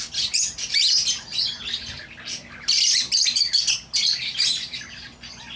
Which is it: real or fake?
real